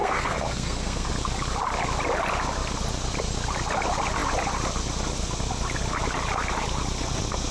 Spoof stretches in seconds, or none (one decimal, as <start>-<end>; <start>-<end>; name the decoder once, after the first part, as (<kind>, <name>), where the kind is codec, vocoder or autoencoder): 0.0-1.1 (codec, SNAC)